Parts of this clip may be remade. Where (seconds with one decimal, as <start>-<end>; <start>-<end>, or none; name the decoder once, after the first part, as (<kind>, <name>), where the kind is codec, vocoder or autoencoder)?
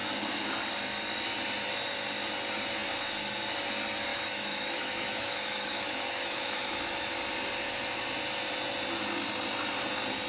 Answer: 4.1-7.1 (autoencoder, DAC-VAE)